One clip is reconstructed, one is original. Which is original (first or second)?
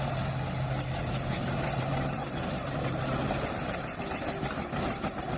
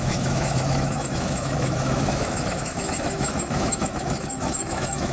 first